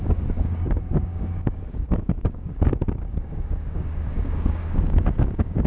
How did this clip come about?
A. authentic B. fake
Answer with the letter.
B